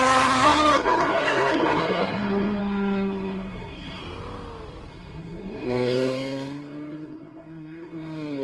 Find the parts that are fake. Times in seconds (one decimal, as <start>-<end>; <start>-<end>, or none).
0.0-4.0; 4.9-8.4